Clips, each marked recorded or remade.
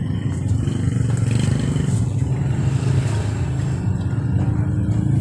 recorded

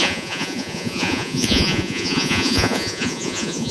remade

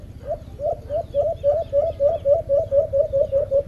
recorded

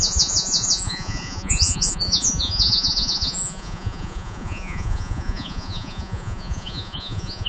remade